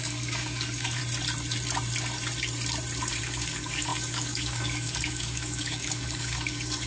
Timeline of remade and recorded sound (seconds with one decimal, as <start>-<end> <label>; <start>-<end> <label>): 0.0-1.0 remade; 1.0-3.2 recorded; 3.2-6.9 remade

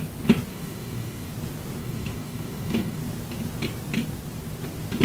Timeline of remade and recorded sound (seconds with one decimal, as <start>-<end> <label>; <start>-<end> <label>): 0.0-0.5 recorded; 0.5-1.3 remade; 1.3-1.8 recorded; 1.8-3.0 remade; 3.0-5.0 recorded